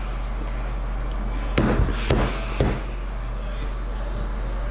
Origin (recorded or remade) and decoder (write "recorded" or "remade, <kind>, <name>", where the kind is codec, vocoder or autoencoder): recorded